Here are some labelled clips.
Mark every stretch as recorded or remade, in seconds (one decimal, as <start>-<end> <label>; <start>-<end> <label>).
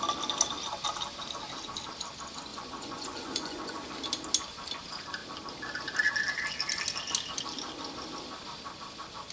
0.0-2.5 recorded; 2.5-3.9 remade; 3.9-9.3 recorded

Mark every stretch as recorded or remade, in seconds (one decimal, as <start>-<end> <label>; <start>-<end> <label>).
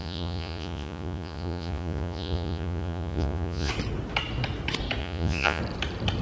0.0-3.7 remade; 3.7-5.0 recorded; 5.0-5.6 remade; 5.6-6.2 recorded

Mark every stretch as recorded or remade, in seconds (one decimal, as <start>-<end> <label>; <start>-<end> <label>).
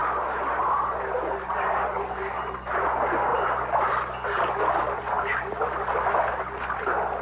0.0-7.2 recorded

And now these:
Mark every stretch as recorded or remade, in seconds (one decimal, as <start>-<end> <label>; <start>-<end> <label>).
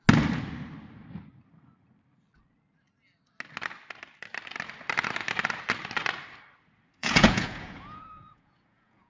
0.0-7.0 recorded; 7.0-9.1 remade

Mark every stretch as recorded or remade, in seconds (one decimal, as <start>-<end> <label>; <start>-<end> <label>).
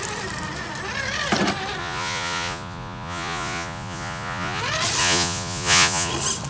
0.0-1.8 recorded; 1.8-4.6 remade; 4.6-5.0 recorded; 5.0-6.1 remade; 6.1-6.5 recorded